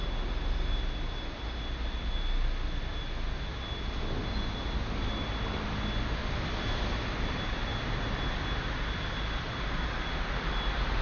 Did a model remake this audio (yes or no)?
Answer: no